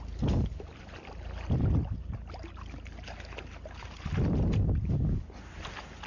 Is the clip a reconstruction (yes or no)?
no